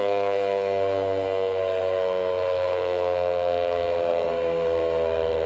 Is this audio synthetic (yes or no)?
yes